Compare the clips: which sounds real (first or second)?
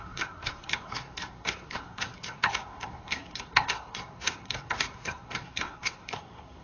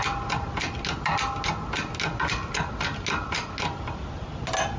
second